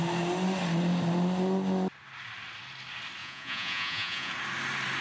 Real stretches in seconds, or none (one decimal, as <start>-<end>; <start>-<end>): 0.0-3.2; 4.3-5.0